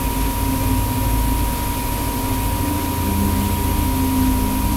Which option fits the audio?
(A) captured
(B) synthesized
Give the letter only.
A